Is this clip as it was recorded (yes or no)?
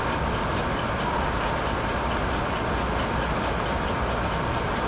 yes